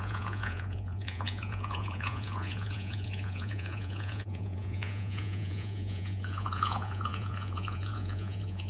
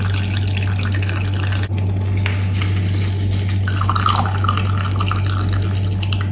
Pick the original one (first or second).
second